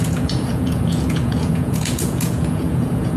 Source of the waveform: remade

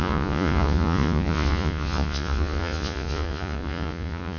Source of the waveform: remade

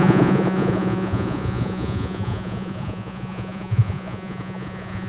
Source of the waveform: remade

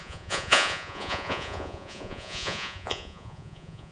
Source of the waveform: remade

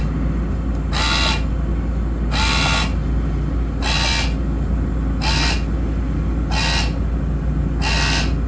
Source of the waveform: recorded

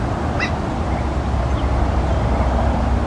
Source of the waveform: recorded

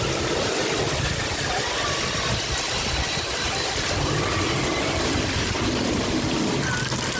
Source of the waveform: recorded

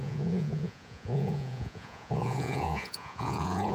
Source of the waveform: remade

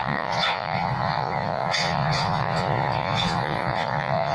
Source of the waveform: remade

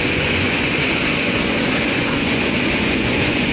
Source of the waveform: remade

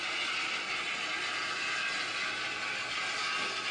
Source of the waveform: recorded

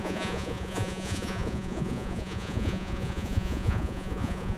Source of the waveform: remade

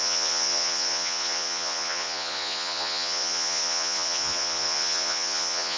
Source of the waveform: remade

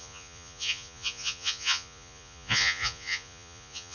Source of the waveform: remade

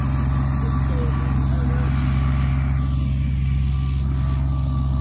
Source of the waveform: recorded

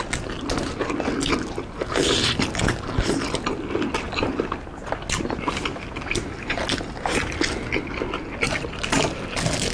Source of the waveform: recorded